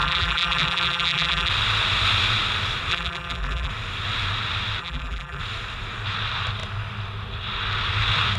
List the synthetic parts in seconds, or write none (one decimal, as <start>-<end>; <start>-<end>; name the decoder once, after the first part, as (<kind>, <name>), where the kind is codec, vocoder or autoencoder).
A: 0.0-1.5 (vocoder, BigVGAN v2); 2.9-3.7; 4.8-5.4